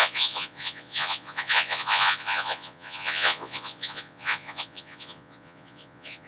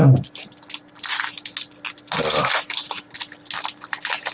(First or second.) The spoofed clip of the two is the first